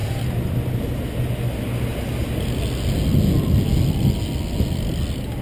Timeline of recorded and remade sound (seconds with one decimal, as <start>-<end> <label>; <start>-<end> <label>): 0.0-5.4 recorded

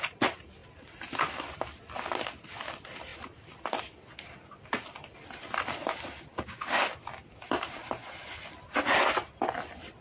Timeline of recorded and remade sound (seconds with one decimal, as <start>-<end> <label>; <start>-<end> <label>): 0.0-6.3 recorded; 6.3-6.9 remade; 6.9-10.0 recorded

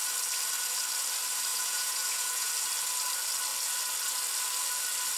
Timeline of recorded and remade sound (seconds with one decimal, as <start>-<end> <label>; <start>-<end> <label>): 0.0-1.5 recorded; 1.5-2.5 remade; 2.5-5.2 recorded

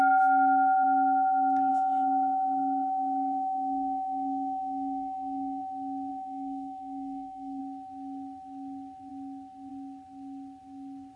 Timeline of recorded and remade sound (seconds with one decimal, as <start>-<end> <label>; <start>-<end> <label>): 0.0-1.7 recorded; 1.7-5.6 remade; 5.6-6.1 recorded; 6.1-7.6 remade; 7.6-11.2 recorded

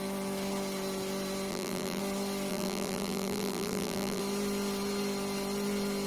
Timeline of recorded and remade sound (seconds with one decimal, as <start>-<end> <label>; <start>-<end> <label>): 0.0-1.5 recorded; 1.5-2.0 remade; 2.0-2.5 recorded; 2.5-4.2 remade; 4.2-6.1 recorded

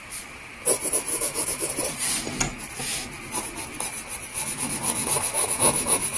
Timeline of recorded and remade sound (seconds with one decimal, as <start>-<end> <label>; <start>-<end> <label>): 0.0-1.1 recorded; 1.1-1.7 remade; 1.7-4.3 recorded; 4.3-6.2 remade

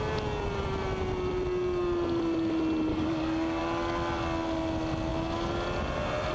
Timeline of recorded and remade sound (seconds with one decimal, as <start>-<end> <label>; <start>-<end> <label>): 0.0-2.9 recorded; 2.9-3.6 remade; 3.6-6.3 recorded